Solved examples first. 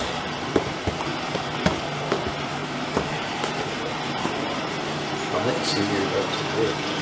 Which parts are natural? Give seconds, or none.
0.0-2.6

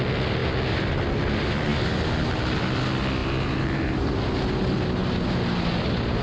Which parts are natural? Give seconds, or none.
0.0-3.2; 4.1-6.2

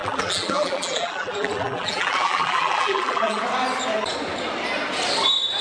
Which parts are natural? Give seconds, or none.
3.4-5.6

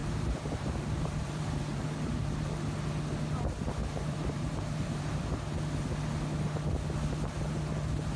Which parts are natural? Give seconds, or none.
2.5-3.8; 5.2-8.2

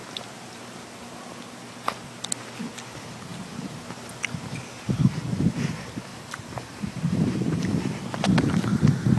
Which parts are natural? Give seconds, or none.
0.0-6.1; 7.6-9.2